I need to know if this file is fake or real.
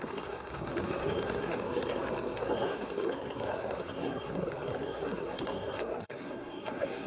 fake